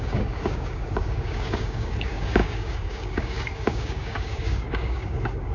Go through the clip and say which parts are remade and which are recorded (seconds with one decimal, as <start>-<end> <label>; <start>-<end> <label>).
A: 0.0-5.5 remade